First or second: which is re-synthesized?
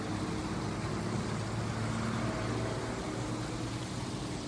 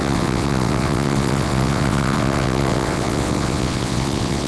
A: second